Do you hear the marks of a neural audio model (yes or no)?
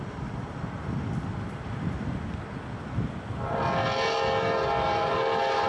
no